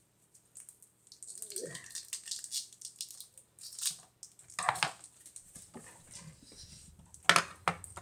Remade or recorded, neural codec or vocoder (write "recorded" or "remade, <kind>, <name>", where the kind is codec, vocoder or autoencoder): recorded